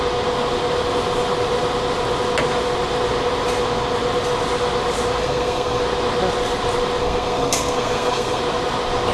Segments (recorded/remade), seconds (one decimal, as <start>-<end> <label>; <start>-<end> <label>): 0.0-5.2 recorded; 5.2-5.8 remade; 5.8-7.0 recorded; 7.0-8.4 remade; 8.4-9.1 recorded